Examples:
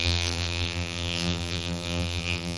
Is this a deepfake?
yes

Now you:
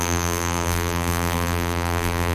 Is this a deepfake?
yes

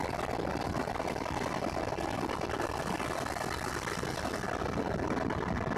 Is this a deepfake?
no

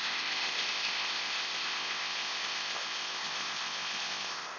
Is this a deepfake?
yes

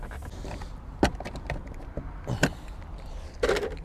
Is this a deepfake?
no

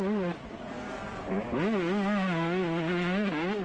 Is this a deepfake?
no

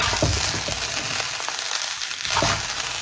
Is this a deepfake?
no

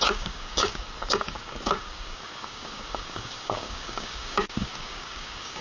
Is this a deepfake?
yes